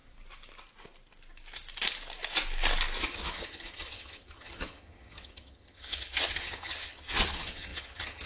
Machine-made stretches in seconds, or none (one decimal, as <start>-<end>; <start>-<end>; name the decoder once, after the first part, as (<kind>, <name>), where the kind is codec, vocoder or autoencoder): 3.0-8.3 (vocoder, HiFi-GAN)